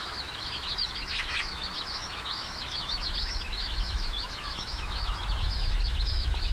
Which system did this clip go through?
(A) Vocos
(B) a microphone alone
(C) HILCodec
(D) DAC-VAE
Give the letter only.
D